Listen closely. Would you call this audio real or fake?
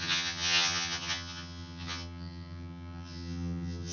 fake